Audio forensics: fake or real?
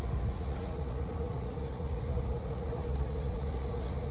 fake